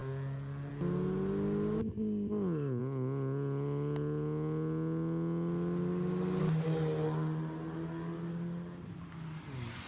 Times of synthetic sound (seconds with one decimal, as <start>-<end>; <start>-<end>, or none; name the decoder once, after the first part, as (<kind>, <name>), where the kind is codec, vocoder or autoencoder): none